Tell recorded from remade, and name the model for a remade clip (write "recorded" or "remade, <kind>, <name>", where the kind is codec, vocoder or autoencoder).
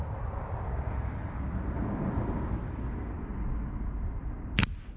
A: recorded